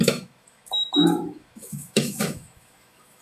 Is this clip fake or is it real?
fake